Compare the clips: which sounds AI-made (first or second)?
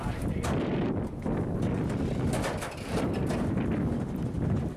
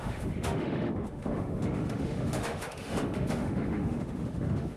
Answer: second